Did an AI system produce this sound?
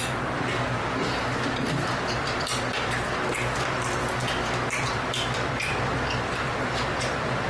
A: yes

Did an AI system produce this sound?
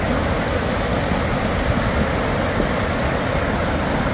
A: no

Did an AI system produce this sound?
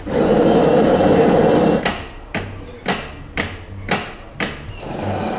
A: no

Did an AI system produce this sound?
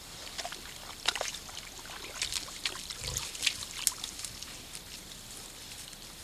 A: no